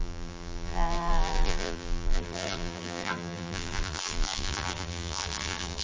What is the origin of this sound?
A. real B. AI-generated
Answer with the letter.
B